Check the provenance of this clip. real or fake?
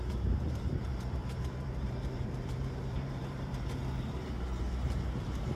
fake